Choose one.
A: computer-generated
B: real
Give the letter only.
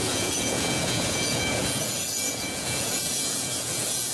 A